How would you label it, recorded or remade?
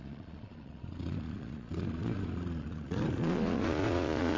remade